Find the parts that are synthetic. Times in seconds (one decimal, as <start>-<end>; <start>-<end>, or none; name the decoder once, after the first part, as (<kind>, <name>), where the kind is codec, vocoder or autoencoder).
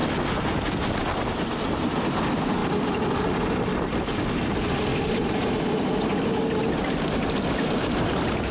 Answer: 0.0-1.0 (vocoder, BigVGAN v2); 4.9-6.4